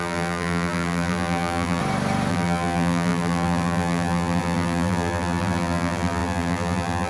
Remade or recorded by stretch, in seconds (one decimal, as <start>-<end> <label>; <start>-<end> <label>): 0.0-1.8 remade; 1.8-2.3 recorded; 2.3-7.1 remade